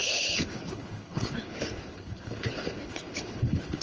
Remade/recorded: remade